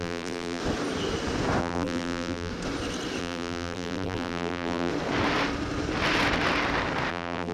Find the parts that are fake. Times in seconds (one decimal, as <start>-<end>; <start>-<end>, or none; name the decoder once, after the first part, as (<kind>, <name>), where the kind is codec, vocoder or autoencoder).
0.0-0.6 (vocoder, BigVGAN v2); 1.6-2.5; 3.2-4.9; 7.1-7.5